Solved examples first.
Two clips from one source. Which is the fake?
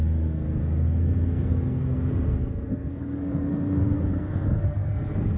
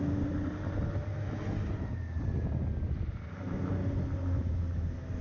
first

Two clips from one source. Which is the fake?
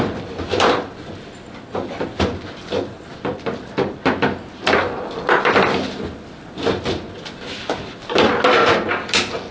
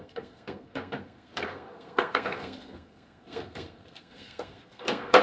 second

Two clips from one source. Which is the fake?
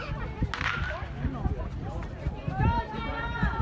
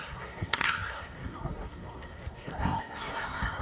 second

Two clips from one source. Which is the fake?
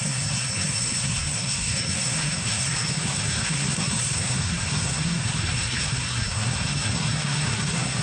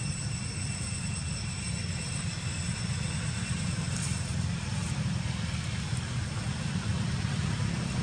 first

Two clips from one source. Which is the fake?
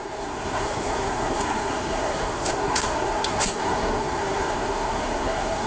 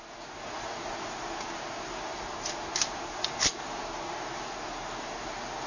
first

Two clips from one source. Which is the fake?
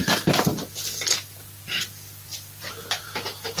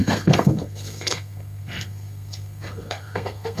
second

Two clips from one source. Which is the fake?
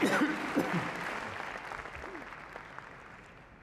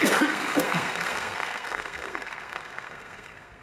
second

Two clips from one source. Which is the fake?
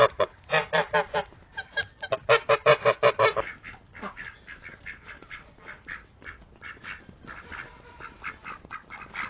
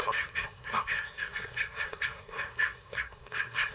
second